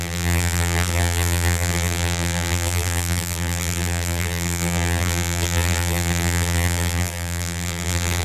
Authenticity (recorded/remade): remade